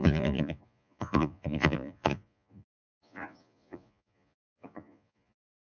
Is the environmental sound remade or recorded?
remade